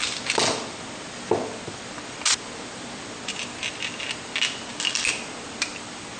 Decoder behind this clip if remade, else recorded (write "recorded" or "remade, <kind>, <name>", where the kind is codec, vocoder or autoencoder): recorded